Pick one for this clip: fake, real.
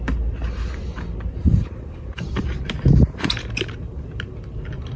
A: fake